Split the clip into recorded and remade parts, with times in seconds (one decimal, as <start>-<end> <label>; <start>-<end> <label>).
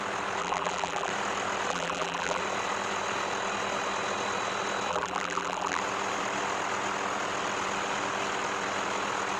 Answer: 0.0-0.4 recorded; 0.4-1.1 remade; 1.1-1.7 recorded; 1.7-2.4 remade; 2.4-4.9 recorded; 4.9-5.8 remade; 5.8-9.4 recorded